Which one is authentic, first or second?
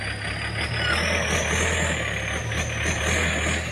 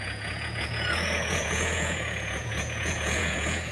first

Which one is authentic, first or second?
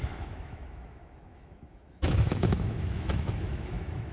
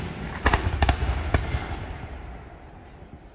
second